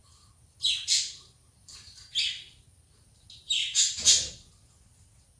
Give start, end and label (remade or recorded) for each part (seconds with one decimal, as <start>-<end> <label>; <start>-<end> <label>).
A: 0.0-5.4 recorded